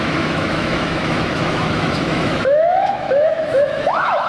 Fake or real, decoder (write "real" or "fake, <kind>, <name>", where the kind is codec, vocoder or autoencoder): fake, autoencoder, DAC-VAE